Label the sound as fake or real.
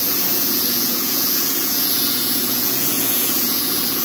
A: fake